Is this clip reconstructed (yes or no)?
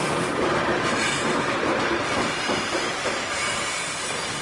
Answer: yes